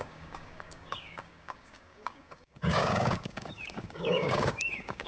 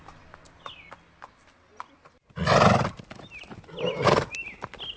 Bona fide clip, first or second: second